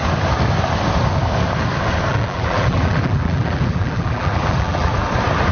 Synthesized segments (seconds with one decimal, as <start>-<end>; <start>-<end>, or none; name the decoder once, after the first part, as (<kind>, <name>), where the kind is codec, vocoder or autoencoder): 2.1-4.9 (vocoder, BigVGAN v2)